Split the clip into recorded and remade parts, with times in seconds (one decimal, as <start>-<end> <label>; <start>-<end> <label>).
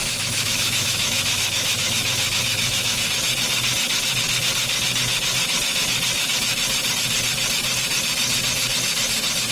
0.0-3.1 remade; 3.1-9.5 recorded